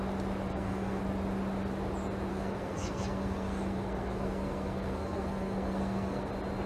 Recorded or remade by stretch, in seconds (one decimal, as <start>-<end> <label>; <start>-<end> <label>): 0.0-0.5 recorded; 0.5-1.0 remade; 1.0-2.3 recorded; 2.3-6.3 remade; 6.3-6.7 recorded